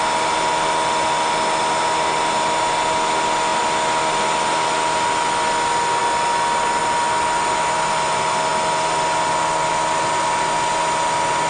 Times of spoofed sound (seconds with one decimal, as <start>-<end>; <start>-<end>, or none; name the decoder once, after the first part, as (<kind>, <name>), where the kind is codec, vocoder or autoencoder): none